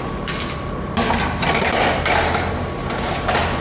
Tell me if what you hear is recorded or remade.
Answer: recorded